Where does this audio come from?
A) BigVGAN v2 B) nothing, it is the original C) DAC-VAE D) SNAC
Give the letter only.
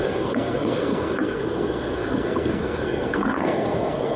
D